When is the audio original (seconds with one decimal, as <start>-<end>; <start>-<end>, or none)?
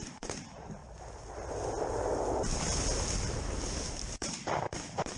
0.8-3.9